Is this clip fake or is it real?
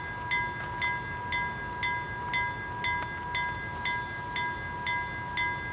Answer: real